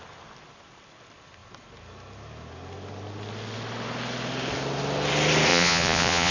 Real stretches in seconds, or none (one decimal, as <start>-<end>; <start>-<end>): 0.0-5.5